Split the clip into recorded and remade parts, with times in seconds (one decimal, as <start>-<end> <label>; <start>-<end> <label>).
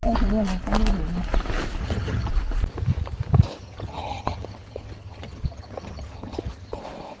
0.0-1.8 recorded; 1.8-2.3 remade; 2.3-3.6 recorded; 3.6-6.8 remade; 6.8-7.2 recorded